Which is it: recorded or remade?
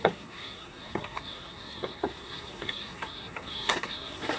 remade